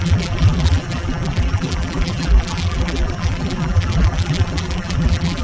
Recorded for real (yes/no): no